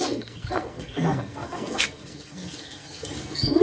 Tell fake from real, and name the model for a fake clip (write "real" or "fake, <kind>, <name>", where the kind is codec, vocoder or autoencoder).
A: fake, codec, SNAC